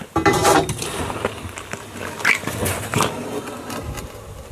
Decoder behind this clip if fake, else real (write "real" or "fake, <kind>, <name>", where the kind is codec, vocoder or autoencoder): real